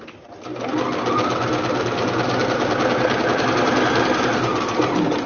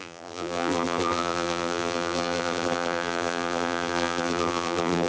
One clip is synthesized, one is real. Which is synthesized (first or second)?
second